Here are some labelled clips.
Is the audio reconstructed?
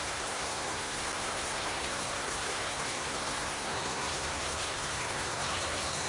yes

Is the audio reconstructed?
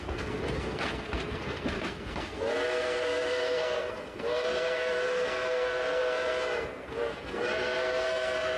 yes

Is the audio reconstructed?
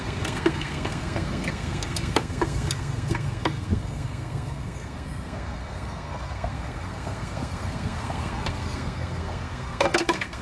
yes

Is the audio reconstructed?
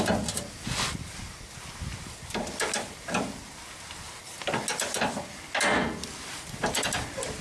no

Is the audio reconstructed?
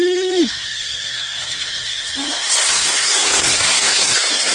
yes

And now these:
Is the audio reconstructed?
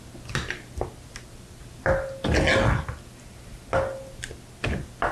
no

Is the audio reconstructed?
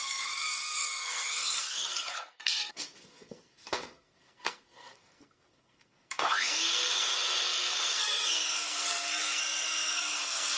yes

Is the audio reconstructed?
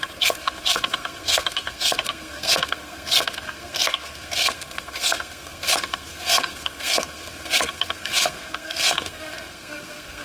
yes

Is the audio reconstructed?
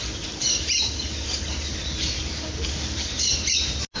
no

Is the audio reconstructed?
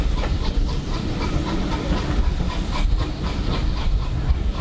no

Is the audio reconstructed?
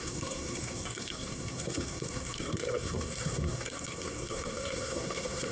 yes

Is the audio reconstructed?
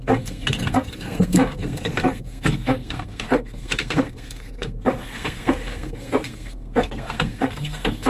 yes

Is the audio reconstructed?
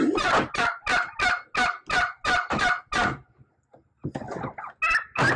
no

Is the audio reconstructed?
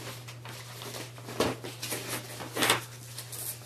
no